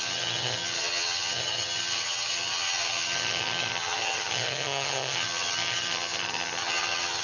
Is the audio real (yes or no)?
no